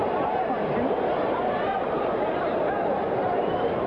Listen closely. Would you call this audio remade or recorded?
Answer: remade